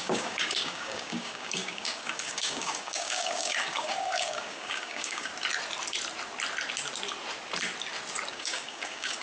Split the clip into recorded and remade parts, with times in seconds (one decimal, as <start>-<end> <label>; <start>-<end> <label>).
0.0-5.3 remade; 5.3-8.3 recorded; 8.3-9.2 remade